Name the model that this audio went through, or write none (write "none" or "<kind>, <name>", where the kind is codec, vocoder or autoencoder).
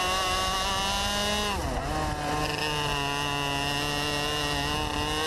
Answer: none